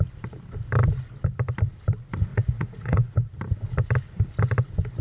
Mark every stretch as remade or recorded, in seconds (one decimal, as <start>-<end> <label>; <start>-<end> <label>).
0.0-2.3 recorded; 2.3-3.3 remade; 3.3-5.0 recorded